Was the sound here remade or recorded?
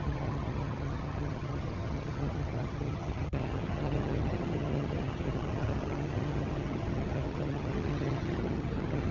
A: remade